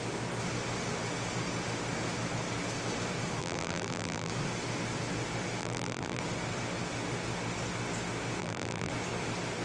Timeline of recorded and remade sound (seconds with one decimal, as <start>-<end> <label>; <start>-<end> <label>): 0.0-3.4 recorded; 3.4-4.3 remade; 4.3-5.6 recorded; 5.6-6.2 remade; 6.2-8.4 recorded; 8.4-8.9 remade; 8.9-9.6 recorded